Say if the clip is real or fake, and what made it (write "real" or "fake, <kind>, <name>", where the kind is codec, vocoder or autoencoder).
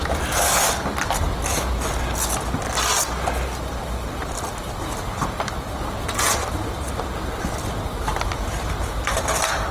real